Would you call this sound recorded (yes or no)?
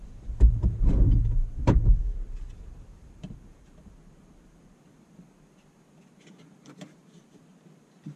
no